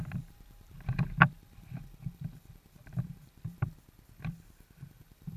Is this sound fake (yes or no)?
yes